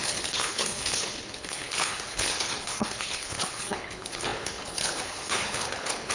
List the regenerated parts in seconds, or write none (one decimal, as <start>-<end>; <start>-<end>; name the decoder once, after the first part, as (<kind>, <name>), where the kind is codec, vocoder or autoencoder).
0.0-6.1 (codec, HILCodec)